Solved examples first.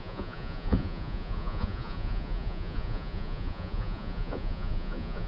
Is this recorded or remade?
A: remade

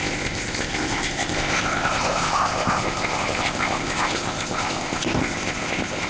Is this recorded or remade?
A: remade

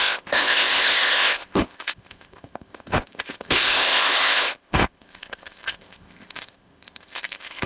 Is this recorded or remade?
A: remade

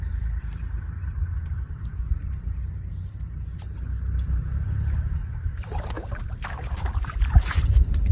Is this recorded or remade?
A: remade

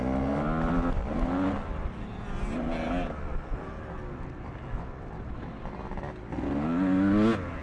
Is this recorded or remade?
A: recorded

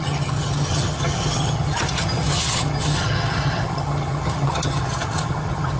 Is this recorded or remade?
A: remade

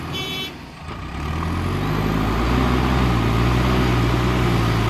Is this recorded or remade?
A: recorded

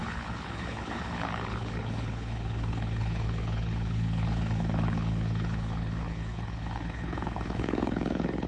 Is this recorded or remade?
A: remade